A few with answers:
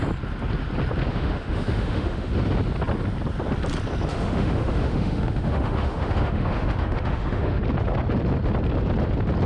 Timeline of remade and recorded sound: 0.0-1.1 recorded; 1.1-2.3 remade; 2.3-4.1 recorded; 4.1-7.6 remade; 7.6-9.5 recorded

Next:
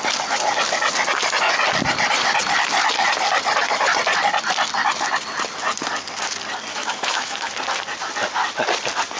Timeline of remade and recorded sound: 0.0-6.7 recorded; 6.7-7.5 remade; 7.5-9.2 recorded